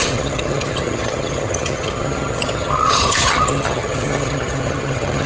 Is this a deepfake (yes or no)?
yes